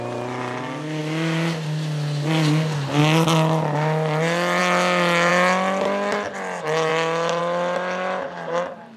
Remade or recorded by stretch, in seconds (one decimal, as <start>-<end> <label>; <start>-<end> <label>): 0.0-6.9 recorded; 6.9-7.4 remade; 7.4-9.0 recorded

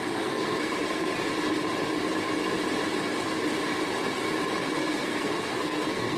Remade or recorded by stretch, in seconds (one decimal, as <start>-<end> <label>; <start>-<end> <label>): 0.0-1.1 remade; 1.1-4.6 recorded; 4.6-6.2 remade

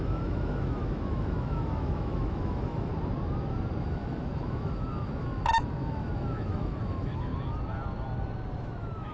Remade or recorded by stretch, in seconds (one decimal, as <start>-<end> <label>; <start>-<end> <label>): 0.0-2.9 remade; 2.9-3.8 recorded; 3.8-7.3 remade; 7.3-8.6 recorded; 8.6-9.1 remade

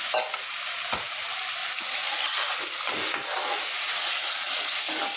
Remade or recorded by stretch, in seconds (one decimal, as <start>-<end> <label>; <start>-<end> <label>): 0.0-5.2 recorded